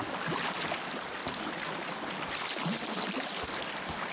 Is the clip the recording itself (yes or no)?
yes